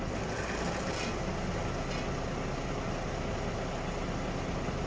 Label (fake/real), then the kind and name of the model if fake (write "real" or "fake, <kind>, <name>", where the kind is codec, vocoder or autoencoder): real